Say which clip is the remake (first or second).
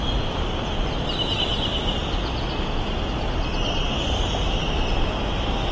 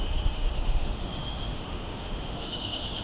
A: second